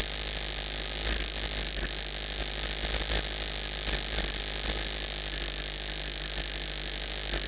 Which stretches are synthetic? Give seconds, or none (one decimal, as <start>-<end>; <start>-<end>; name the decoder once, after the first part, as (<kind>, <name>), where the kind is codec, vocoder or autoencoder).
none